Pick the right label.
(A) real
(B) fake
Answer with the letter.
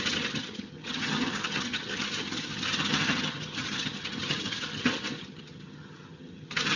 B